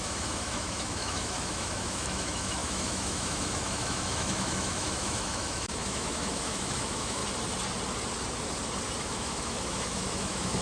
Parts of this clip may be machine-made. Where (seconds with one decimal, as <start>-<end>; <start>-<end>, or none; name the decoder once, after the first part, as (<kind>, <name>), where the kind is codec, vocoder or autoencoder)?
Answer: 0.0-7.2 (autoencoder, DAC-VAE); 9.0-10.6